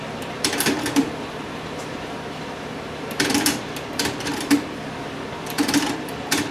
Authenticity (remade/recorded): remade